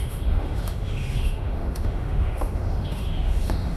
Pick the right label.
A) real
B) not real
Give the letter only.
B